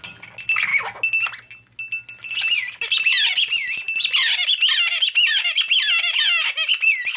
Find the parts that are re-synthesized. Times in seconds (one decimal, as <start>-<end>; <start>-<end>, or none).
none